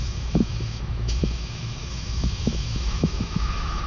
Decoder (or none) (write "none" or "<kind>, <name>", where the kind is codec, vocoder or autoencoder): autoencoder, DAC-VAE